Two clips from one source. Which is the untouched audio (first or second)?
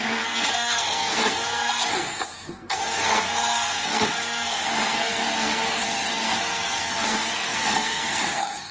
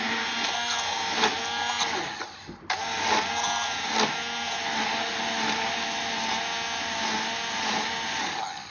second